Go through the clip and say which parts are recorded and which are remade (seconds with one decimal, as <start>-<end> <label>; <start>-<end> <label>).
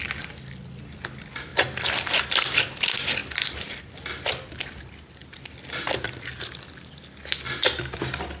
0.0-1.5 recorded; 1.5-2.3 remade; 2.3-5.2 recorded; 5.2-7.0 remade; 7.0-8.4 recorded